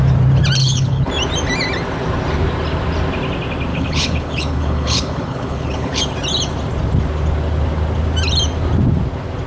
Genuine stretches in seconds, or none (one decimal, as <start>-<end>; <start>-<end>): 0.0-0.6; 1.1-3.7; 6.0-9.5